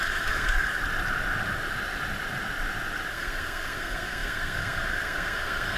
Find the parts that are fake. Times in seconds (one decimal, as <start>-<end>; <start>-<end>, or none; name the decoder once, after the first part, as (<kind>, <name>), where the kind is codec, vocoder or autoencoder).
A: 0.0-0.8 (codec, SNAC); 3.1-5.8

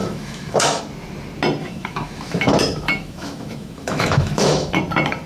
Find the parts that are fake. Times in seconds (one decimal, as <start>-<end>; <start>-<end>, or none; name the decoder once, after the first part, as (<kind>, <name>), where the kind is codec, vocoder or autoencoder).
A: 0.0-0.8 (autoencoder, DAC-VAE); 1.6-4.8